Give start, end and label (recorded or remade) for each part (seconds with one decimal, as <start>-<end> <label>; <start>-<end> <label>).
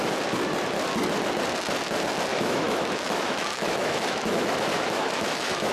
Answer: 0.0-2.3 recorded; 2.3-5.7 remade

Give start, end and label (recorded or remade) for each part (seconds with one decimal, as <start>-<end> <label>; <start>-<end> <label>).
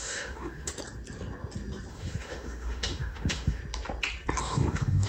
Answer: 0.0-0.7 remade; 0.7-1.9 recorded; 1.9-3.6 remade; 3.6-4.4 recorded; 4.4-5.1 remade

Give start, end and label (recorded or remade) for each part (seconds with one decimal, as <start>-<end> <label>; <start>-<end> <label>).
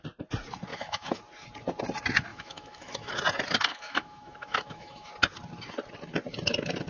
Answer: 0.0-0.7 recorded; 0.7-1.2 remade; 1.2-2.3 recorded; 2.3-3.1 remade; 3.1-3.7 recorded; 3.7-5.1 remade; 5.1-6.9 recorded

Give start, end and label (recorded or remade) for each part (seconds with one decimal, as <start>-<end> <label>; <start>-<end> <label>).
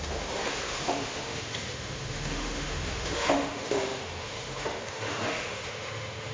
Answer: 0.0-6.3 remade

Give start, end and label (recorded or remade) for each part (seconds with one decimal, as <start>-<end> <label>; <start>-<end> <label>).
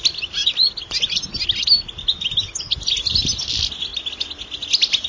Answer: 0.0-5.1 recorded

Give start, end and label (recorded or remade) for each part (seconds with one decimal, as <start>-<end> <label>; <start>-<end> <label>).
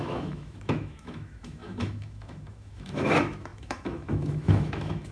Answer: 0.0-5.1 remade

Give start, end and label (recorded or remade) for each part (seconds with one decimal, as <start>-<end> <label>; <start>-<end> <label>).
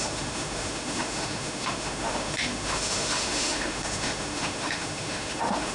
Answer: 0.0-5.7 remade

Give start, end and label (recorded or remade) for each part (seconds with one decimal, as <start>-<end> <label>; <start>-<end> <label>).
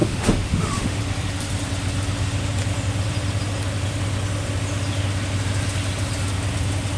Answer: 0.0-1.0 remade; 1.0-7.0 recorded